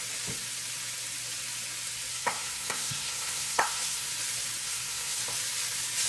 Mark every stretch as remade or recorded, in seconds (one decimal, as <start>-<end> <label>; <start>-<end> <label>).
0.0-2.1 recorded; 2.1-4.1 remade; 4.1-4.6 recorded; 4.6-5.2 remade; 5.2-6.1 recorded